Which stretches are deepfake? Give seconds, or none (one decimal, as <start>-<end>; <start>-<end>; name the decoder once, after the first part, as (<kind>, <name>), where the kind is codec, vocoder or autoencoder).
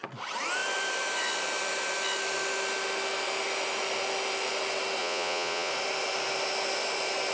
5.0-5.7 (vocoder, Vocos)